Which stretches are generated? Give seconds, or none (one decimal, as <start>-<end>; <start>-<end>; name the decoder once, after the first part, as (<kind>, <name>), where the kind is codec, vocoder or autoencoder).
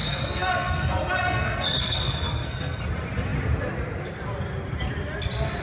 0.0-2.8 (codec, SNAC)